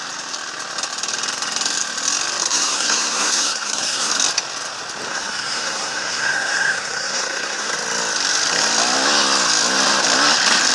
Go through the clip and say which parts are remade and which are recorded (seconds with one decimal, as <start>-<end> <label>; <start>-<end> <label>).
0.0-2.4 recorded; 2.4-4.1 remade; 4.1-5.1 recorded; 5.1-7.7 remade; 7.7-10.7 recorded